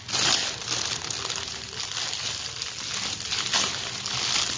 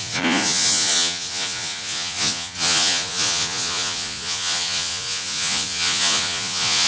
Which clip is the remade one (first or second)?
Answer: second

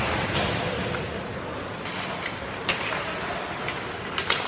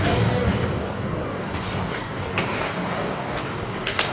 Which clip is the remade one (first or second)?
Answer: second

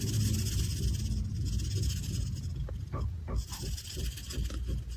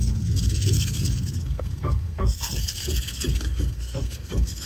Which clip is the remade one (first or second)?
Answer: second